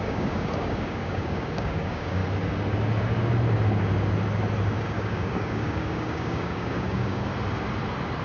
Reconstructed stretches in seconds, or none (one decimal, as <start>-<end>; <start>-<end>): 0.0-2.2; 4.8-7.3